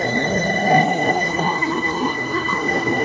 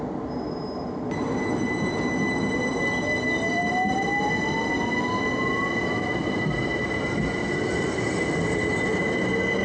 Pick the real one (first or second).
second